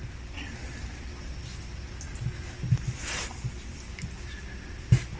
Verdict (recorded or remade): recorded